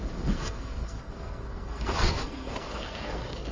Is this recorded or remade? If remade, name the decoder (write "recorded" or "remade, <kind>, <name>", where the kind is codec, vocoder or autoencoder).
remade, codec, SNAC